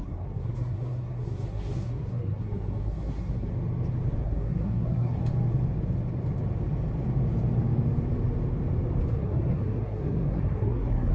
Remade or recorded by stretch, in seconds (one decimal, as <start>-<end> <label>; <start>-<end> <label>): 0.0-3.5 remade; 3.5-4.2 recorded; 4.2-5.2 remade; 5.2-9.1 recorded; 9.1-11.1 remade